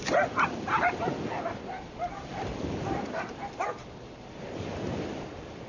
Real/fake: fake